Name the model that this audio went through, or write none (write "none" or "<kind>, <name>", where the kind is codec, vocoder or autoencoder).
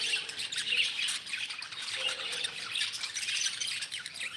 vocoder, BigVGAN v2